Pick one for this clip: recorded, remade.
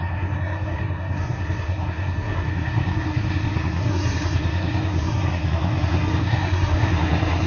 remade